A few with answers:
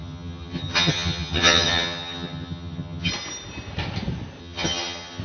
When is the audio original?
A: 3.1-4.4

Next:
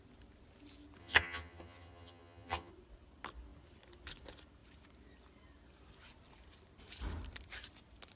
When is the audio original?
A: 0.0-1.0; 2.7-8.2

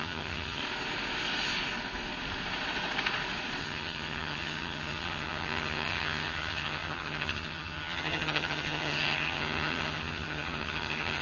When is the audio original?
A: 0.6-3.6

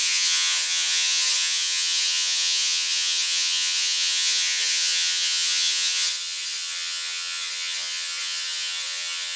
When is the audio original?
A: none

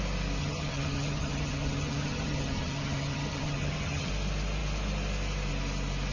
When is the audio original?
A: 0.0-0.4; 4.1-6.1